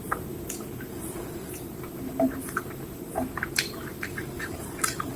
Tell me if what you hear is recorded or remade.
remade